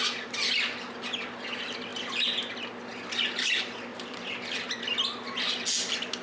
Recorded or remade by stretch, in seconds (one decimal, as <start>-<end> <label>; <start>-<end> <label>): 0.0-2.9 recorded; 2.9-3.5 remade; 3.5-3.9 recorded; 3.9-4.8 remade; 4.8-6.2 recorded